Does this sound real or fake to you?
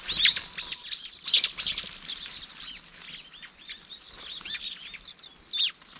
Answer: real